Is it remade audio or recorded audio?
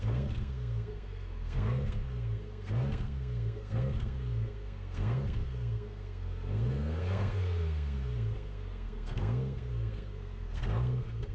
remade